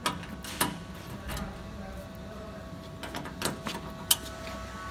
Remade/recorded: recorded